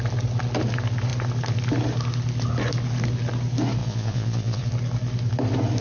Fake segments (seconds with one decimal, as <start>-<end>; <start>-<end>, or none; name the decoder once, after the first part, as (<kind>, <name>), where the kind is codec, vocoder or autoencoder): 3.8-4.7 (vocoder, Vocos)